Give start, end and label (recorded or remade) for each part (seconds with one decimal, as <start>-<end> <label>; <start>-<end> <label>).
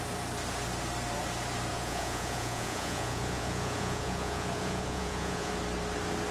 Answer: 0.0-1.7 recorded; 1.7-5.5 remade; 5.5-6.3 recorded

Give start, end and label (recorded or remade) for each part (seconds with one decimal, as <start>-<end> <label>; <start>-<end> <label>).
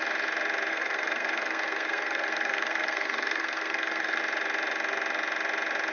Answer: 0.0-0.7 recorded; 0.7-4.2 remade; 4.2-5.9 recorded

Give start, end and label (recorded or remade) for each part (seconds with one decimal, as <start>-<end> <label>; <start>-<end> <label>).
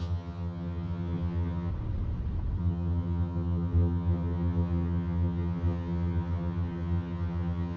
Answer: 0.0-1.7 remade; 1.7-2.6 recorded; 2.6-7.8 remade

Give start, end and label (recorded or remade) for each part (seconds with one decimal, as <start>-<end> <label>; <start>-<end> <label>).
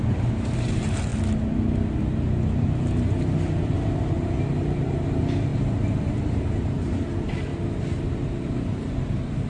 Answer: 0.0-1.1 remade; 1.1-2.0 recorded; 2.0-7.5 remade; 7.5-8.0 recorded; 8.0-9.5 remade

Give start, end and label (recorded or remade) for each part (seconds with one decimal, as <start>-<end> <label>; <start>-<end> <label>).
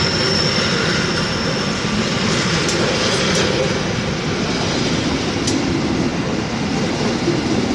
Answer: 0.0-7.7 recorded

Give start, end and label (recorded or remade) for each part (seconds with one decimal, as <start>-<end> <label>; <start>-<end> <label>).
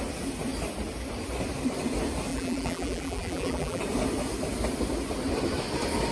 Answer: 0.0-2.3 recorded; 2.3-3.8 remade; 3.8-6.1 recorded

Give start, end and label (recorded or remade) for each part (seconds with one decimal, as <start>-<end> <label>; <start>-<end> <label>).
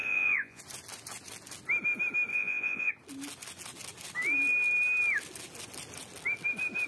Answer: 0.0-0.6 remade; 0.6-2.3 recorded; 2.3-2.9 remade; 2.9-6.9 recorded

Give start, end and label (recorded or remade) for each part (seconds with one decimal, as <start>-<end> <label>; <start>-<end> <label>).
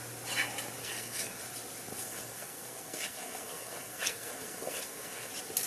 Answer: 0.0-0.8 recorded; 0.8-1.4 remade; 1.4-1.9 recorded; 1.9-5.3 remade; 5.3-5.7 recorded